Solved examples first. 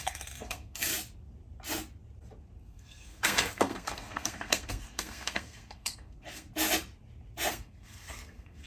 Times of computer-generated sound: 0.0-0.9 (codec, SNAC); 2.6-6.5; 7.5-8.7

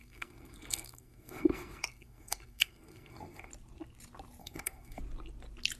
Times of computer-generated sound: 0.0-3.5 (codec, SNAC); 4.4-5.0

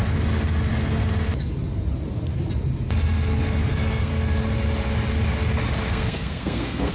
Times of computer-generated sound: 3.6-4.1 (codec, SNAC); 5.9-6.9

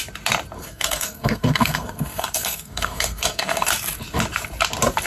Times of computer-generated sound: 0.6-3.7 (codec, SNAC)